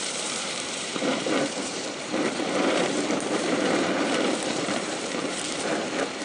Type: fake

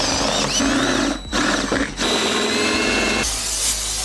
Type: real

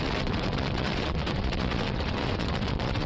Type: fake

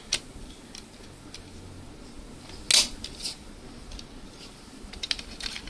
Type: real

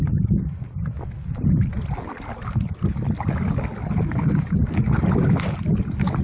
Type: real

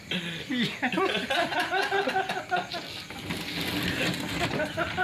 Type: real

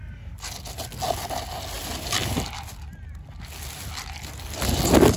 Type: real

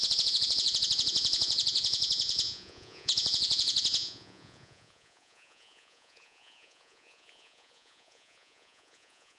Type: fake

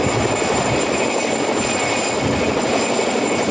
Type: real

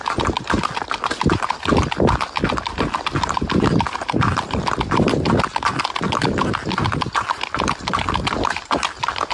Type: real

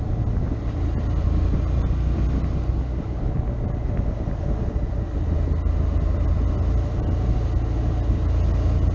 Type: real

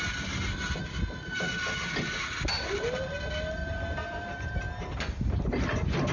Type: real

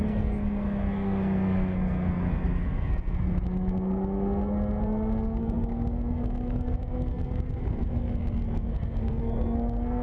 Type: fake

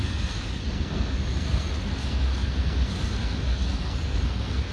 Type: fake